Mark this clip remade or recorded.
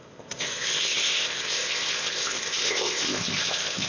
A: remade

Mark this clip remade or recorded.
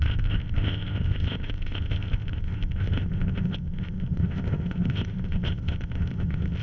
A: remade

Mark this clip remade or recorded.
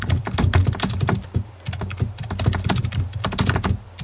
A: recorded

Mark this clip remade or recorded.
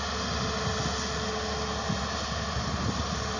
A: recorded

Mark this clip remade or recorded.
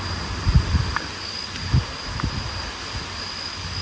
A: recorded